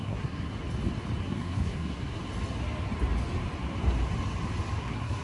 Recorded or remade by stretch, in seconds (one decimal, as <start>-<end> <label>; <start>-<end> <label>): 0.0-0.5 remade; 0.5-1.2 recorded; 1.2-2.2 remade; 2.2-4.8 recorded; 4.8-5.2 remade